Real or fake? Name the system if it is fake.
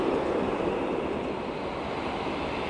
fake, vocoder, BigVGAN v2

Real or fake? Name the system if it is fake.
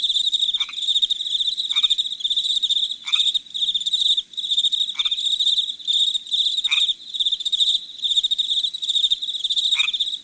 real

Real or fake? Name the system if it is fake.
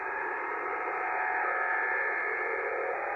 fake, vocoder, BigVGAN v2